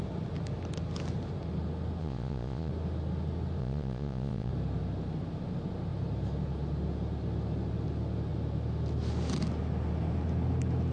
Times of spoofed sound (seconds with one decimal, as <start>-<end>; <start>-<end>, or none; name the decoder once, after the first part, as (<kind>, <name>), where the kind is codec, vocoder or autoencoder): 2.0-2.7 (vocoder, Vocos); 3.6-4.5